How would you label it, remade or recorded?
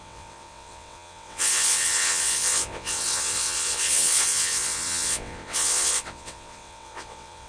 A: remade